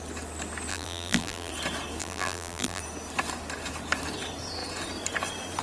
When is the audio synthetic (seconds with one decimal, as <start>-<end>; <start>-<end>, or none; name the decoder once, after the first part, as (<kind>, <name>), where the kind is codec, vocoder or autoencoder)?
0.7-1.5 (vocoder, BigVGAN v2); 2.0-2.8